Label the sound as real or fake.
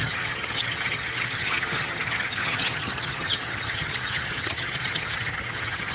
fake